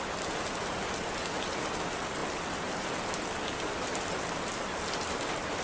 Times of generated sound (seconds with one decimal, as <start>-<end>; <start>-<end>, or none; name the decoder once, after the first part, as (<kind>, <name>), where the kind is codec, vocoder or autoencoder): none